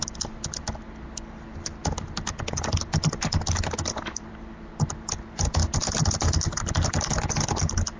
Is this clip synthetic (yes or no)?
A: no